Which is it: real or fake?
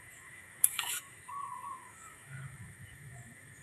fake